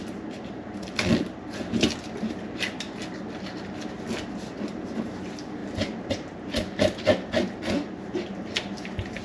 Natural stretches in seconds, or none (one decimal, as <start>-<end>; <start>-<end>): 0.0-9.2